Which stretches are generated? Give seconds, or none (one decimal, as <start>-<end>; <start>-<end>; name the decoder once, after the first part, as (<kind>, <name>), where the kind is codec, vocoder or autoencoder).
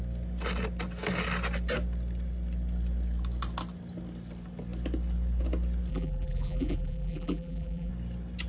5.9-7.9 (vocoder, BigVGAN v2)